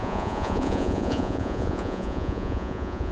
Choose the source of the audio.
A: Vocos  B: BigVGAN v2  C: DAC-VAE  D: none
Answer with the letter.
A